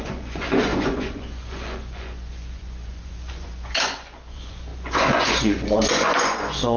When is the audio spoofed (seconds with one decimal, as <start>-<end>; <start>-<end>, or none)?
0.0-6.8